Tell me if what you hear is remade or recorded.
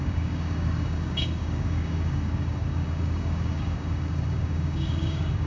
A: remade